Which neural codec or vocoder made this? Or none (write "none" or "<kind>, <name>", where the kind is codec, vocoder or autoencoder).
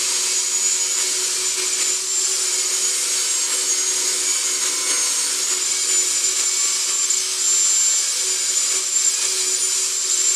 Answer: none